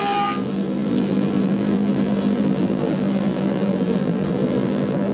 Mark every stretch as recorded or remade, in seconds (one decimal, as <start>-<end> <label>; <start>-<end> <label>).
0.0-5.1 remade